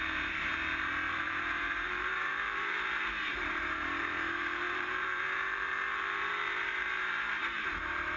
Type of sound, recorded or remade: remade